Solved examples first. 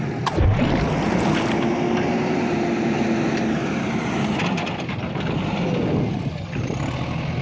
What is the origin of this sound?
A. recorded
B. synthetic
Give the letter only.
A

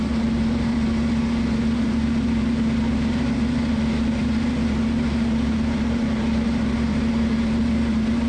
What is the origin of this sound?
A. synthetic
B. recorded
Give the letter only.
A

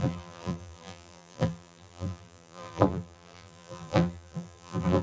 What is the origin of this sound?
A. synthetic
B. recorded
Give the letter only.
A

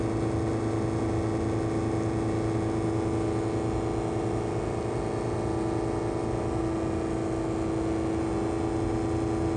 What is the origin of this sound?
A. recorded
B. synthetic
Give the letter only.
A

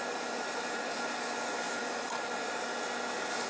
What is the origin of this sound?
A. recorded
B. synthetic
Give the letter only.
A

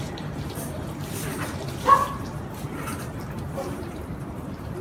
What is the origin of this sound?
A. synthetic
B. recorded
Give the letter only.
A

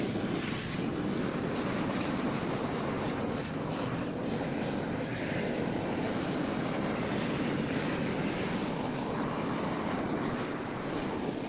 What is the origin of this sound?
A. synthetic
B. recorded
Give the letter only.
A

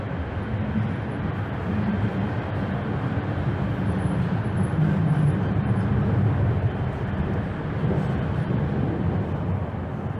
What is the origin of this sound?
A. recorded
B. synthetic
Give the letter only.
A